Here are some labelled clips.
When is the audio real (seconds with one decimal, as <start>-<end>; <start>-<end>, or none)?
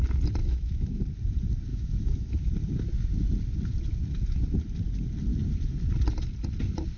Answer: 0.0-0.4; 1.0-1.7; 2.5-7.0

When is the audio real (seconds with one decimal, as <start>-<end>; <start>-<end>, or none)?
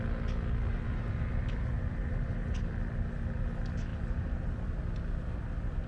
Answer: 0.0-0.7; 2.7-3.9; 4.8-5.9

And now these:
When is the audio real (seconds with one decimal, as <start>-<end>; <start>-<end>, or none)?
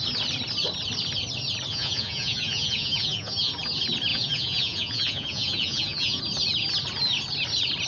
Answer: 0.0-1.7; 3.5-4.1; 6.2-7.9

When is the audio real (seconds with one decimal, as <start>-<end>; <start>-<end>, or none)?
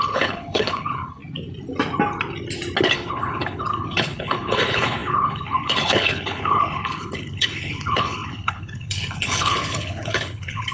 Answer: 1.2-2.8